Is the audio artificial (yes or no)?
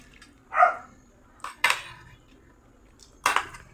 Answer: no